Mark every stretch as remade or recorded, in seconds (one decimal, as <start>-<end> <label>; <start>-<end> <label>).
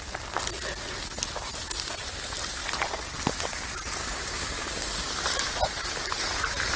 0.0-4.0 recorded; 4.0-5.1 remade; 5.1-6.8 recorded